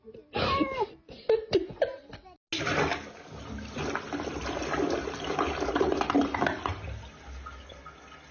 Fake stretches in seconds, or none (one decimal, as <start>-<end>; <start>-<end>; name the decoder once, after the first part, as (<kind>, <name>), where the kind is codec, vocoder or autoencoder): none